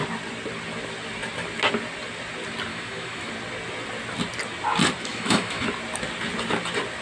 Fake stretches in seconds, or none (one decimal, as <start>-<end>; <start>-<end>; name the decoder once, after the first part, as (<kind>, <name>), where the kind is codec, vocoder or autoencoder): 2.7-3.3 (autoencoder, DAC-VAE); 5.1-5.6

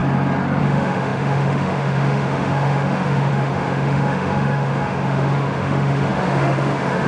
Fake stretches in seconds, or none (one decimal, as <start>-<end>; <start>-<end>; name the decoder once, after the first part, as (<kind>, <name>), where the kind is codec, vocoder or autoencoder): 0.6-7.1 (autoencoder, DAC-VAE)

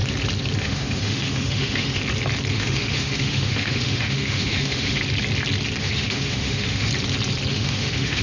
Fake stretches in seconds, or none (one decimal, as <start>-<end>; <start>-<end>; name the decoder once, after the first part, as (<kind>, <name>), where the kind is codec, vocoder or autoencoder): 0.6-2.0 (autoencoder, DAC-VAE); 2.5-5.0; 5.8-6.9; 7.5-8.2

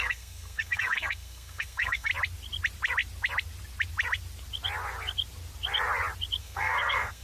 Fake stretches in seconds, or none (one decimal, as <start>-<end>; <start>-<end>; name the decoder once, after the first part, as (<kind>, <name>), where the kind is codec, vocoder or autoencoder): 0.0-2.1 (codec, SNAC); 6.4-7.2

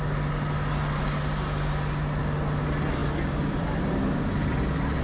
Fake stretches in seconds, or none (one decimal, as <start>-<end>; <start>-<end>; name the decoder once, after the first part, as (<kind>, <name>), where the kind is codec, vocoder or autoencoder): none

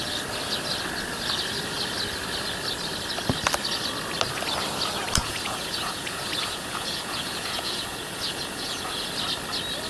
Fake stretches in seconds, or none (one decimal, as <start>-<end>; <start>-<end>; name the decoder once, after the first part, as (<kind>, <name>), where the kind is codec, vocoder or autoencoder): 5.2-9.1 (vocoder, Vocos)

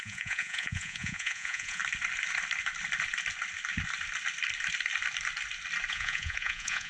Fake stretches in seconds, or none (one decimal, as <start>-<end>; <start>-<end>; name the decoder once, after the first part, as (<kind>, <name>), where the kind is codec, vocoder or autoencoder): 0.0-1.8 (vocoder, Vocos); 5.9-6.9